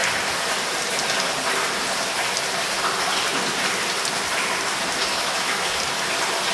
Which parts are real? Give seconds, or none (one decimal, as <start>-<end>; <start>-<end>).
0.0-5.1; 5.8-6.5